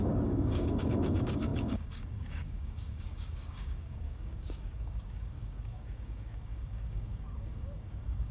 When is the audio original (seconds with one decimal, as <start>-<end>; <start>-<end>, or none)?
none

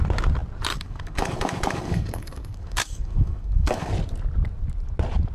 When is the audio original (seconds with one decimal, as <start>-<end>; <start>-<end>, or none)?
0.0-0.7; 3.9-5.3

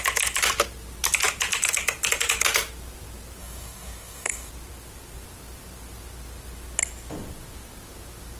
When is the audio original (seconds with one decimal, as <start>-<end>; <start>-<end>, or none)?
0.0-3.4; 4.5-8.4

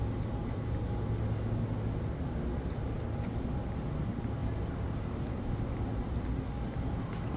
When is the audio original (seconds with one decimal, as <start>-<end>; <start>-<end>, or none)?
0.0-7.4

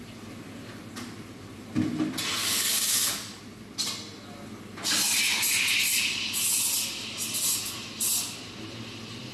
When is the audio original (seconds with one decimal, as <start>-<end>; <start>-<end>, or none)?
0.0-2.4; 3.4-9.3

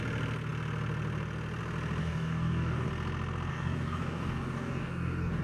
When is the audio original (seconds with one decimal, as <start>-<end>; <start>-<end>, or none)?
0.0-2.0; 2.9-3.5

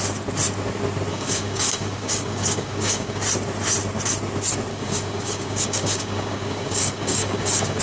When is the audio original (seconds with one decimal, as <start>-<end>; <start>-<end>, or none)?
0.0-1.1; 3.2-4.7